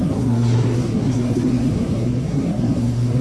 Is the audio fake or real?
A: fake